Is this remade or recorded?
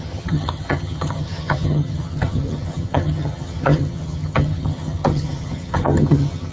remade